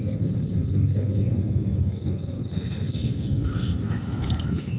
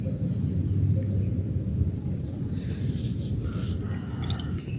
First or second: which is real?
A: second